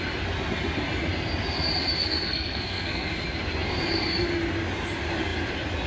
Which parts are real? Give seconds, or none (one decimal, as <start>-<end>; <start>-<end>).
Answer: 0.0-2.0; 3.1-5.9